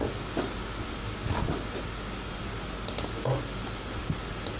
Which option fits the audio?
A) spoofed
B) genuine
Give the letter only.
B